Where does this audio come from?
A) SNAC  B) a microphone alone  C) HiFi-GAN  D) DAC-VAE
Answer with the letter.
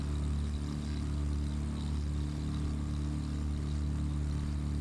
B